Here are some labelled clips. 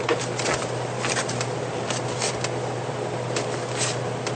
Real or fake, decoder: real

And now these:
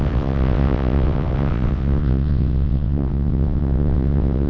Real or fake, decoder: fake, vocoder, WaveNeXt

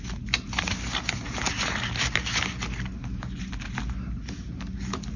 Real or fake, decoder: real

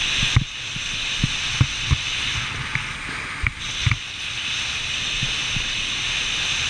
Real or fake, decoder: real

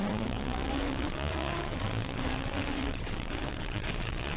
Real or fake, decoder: fake, vocoder, WaveNeXt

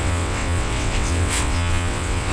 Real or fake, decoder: fake, vocoder, WaveNeXt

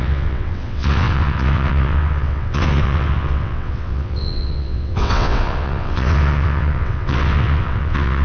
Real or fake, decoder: fake, vocoder, WaveNeXt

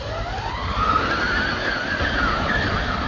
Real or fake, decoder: real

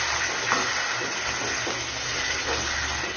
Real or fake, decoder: real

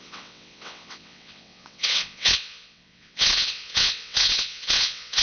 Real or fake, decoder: fake, vocoder, WaveNeXt